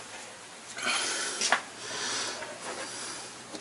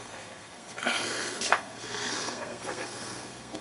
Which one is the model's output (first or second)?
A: second